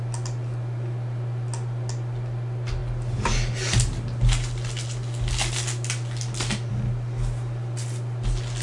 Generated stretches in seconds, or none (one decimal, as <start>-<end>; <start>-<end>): none